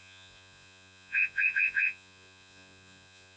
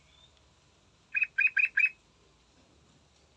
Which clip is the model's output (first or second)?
first